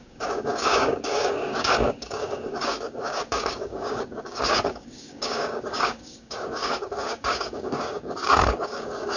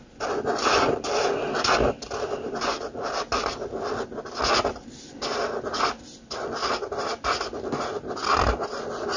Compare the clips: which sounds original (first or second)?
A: second